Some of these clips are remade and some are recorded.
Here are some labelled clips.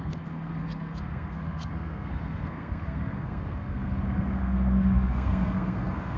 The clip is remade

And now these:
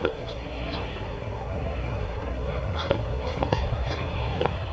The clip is remade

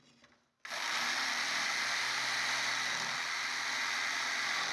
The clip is recorded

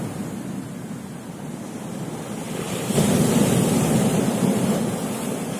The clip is recorded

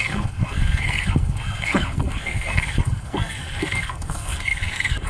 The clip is remade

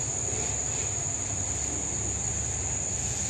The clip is recorded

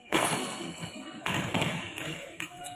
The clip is remade